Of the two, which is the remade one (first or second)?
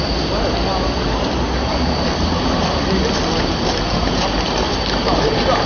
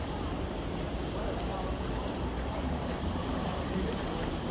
second